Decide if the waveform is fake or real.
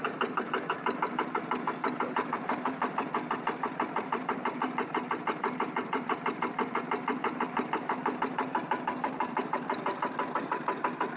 fake